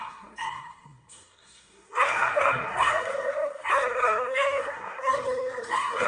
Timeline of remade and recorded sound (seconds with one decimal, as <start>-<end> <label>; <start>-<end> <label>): 0.0-6.1 remade